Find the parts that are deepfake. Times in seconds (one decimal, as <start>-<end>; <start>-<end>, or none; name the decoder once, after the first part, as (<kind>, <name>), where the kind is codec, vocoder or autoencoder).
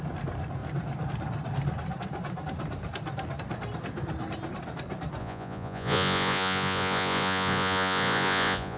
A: 5.2-8.8 (vocoder, Vocos)